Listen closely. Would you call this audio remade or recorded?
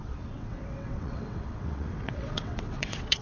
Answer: remade